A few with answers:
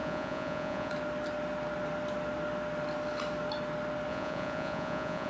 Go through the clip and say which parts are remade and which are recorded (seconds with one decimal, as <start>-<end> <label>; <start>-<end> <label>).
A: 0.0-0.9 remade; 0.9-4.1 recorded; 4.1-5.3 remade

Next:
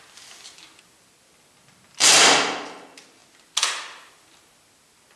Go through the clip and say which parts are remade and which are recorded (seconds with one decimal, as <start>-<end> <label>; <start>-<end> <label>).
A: 0.0-5.2 recorded

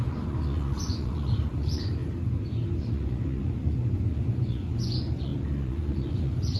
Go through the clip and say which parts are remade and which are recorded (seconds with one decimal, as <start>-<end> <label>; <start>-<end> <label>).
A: 0.0-2.0 remade; 2.0-2.8 recorded; 2.8-6.6 remade